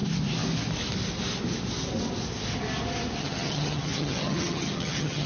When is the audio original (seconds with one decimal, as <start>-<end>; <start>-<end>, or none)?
0.0-3.2